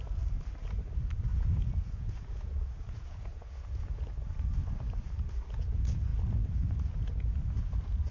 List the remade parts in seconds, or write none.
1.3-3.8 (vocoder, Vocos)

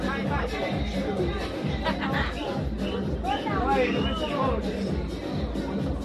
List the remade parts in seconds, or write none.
none

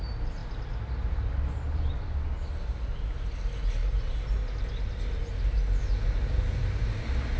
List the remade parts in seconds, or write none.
none